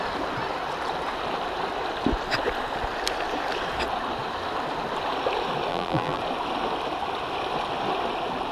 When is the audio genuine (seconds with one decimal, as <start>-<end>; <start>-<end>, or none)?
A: 0.0-5.7; 6.2-8.5